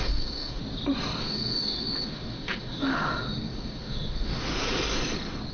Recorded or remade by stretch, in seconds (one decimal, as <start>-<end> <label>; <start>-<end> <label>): 0.0-0.6 remade; 0.6-1.2 recorded; 1.2-4.5 remade; 4.5-5.5 recorded